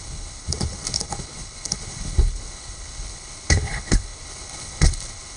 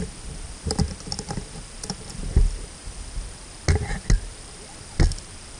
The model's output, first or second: first